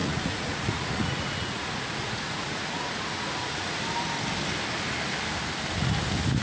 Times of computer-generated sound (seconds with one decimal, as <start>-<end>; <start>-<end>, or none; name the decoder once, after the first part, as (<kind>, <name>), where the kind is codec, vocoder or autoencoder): 0.0-3.8 (vocoder, Vocos)